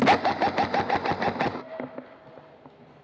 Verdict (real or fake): real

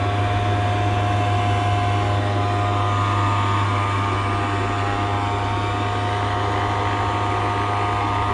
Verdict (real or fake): real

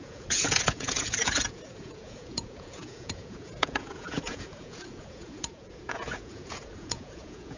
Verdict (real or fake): fake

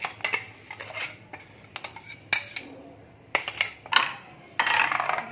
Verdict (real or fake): real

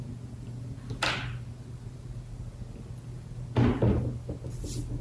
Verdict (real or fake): real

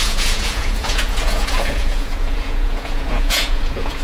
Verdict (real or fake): fake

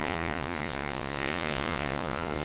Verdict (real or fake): fake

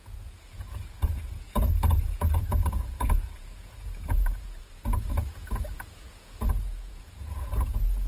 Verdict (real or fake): fake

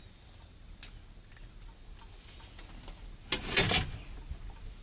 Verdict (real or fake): real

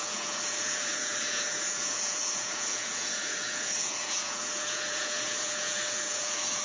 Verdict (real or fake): fake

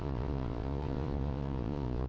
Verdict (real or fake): fake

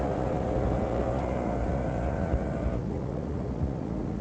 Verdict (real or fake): fake